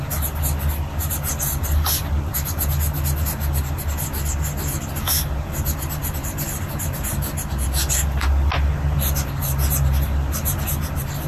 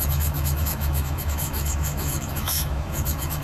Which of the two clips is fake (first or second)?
second